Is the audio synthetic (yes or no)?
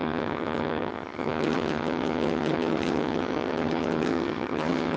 yes